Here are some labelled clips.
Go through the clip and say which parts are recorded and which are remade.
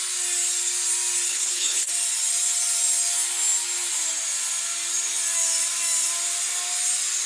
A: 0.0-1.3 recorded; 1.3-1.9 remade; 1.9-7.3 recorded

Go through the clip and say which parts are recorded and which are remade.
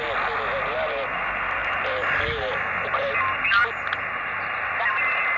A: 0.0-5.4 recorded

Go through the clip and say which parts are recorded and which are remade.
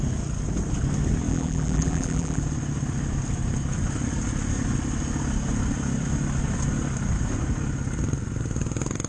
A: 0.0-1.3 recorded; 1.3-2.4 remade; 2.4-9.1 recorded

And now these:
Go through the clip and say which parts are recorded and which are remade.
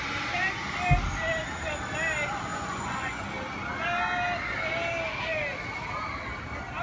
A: 0.0-2.5 recorded; 2.5-3.2 remade; 3.2-6.8 recorded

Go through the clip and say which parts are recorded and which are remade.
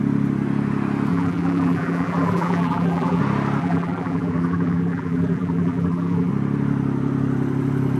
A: 0.0-1.1 recorded; 1.1-3.2 remade; 3.2-3.6 recorded; 3.6-6.3 remade; 6.3-8.0 recorded